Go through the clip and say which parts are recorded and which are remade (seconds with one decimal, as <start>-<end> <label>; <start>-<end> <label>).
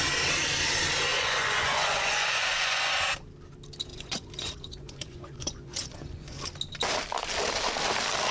0.0-1.1 recorded; 1.1-2.9 remade; 2.9-3.9 recorded; 3.9-6.4 remade; 6.4-8.3 recorded